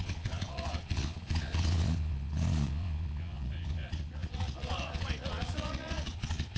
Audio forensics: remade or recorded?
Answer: remade